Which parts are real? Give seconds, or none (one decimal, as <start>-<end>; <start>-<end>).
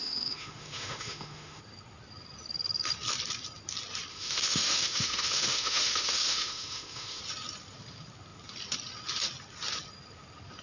1.6-4.1; 7.2-10.6